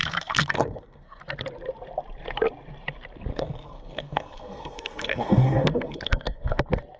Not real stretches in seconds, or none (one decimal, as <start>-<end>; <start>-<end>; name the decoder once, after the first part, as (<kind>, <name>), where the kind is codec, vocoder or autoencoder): 0.0-1.2 (codec, SNAC); 3.3-6.6